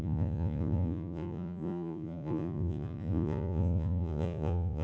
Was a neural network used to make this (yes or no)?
yes